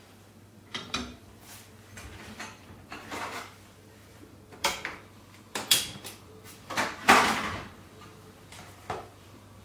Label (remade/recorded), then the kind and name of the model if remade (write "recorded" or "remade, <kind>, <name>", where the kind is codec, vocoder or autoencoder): remade, vocoder, BigVGAN v2